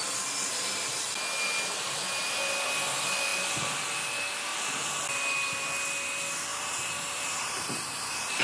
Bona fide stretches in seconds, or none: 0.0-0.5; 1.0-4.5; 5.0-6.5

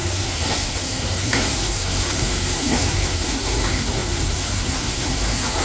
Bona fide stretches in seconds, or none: none

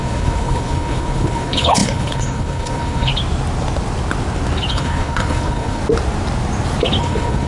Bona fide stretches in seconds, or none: 3.1-4.7; 5.8-7.0

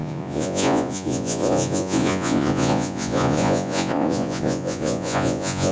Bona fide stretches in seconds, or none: none